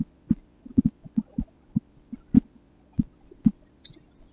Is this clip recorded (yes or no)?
yes